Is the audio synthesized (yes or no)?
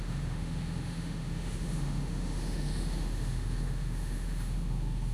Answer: yes